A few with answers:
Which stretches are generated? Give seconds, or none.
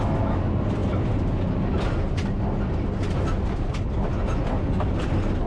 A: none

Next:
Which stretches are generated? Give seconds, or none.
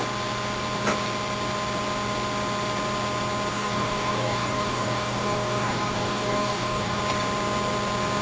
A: 3.5-7.0 (codec, DAC)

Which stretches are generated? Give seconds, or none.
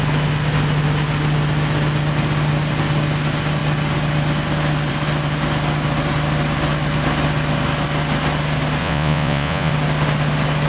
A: 8.8-9.7 (vocoder, Vocos)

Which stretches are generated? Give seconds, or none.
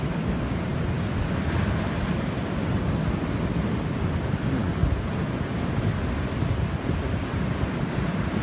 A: none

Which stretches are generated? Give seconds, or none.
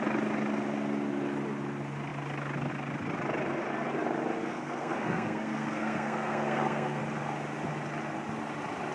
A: 4.4-7.0 (codec, SNAC)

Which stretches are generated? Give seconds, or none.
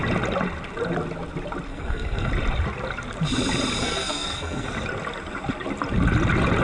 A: 1.7-2.3 (codec, SNAC); 3.8-4.7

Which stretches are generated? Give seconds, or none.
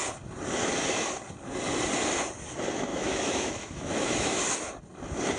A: 2.9-4.4 (autoencoder, DAC-VAE)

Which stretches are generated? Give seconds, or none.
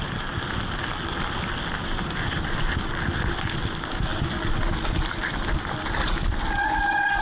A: none